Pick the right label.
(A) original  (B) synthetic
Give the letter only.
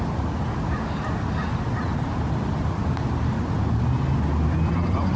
A